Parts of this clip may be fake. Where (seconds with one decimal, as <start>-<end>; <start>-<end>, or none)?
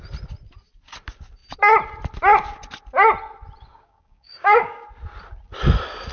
3.7-4.8